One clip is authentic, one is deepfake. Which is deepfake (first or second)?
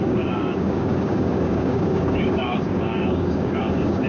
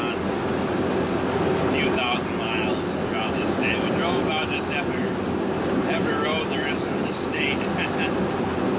first